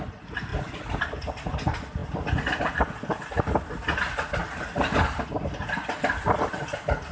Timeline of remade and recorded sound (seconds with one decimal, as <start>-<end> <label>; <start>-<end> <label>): 0.0-7.1 recorded